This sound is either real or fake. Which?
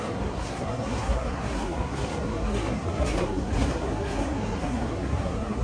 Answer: fake